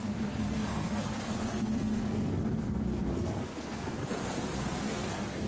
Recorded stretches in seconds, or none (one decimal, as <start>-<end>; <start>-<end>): none